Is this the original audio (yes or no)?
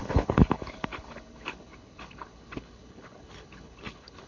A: no